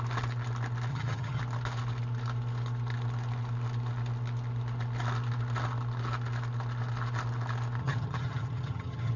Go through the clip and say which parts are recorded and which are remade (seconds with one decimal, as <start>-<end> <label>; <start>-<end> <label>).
0.0-0.9 recorded; 0.9-1.4 remade; 1.4-7.8 recorded; 7.8-9.2 remade